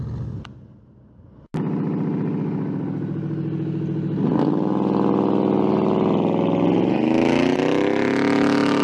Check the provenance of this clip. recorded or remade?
recorded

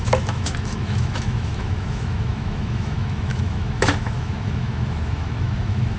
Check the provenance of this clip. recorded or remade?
remade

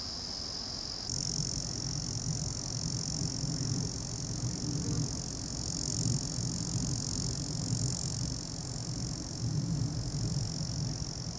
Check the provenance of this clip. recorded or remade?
recorded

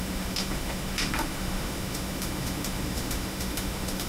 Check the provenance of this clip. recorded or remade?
remade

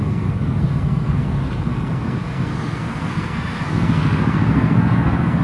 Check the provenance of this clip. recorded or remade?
remade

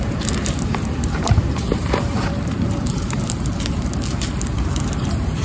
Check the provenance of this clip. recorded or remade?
remade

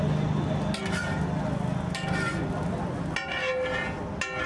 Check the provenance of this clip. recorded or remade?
recorded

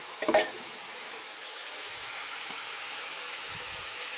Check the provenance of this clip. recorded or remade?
remade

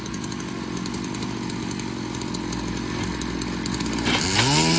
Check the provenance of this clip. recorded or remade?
recorded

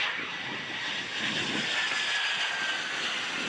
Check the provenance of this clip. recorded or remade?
recorded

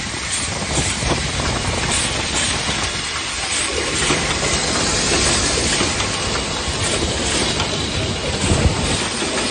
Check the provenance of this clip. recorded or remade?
recorded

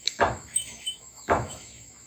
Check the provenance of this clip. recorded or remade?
remade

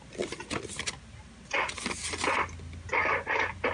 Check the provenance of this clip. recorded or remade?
recorded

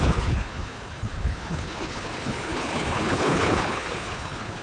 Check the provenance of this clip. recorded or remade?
remade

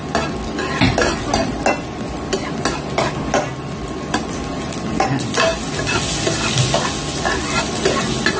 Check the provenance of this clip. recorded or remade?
recorded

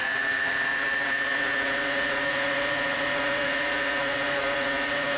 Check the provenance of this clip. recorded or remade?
remade